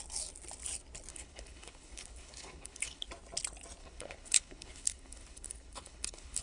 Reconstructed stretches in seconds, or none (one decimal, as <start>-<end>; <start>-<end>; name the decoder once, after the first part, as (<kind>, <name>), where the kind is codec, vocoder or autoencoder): 1.1-3.1 (codec, HILCodec); 3.8-6.4